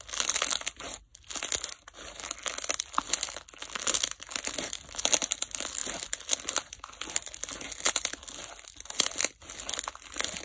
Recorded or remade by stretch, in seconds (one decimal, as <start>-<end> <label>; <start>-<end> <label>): 0.0-10.4 recorded